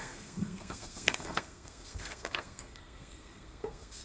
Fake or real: fake